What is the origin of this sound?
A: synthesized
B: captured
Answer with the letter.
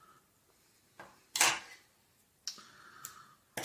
B